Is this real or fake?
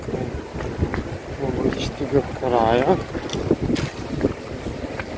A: real